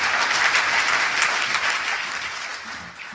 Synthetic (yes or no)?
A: no